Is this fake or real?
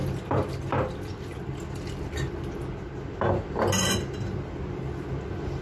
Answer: real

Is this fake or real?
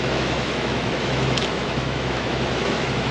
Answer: fake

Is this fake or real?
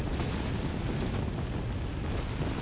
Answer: real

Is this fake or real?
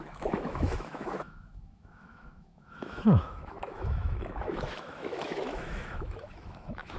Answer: fake